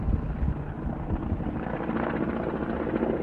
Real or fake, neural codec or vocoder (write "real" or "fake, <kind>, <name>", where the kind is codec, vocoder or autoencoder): real